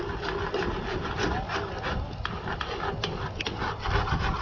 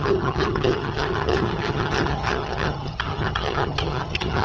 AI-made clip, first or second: second